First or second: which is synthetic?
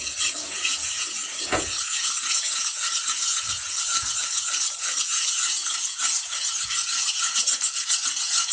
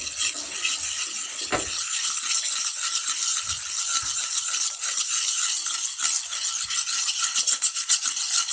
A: first